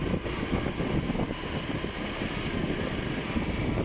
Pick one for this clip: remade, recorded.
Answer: recorded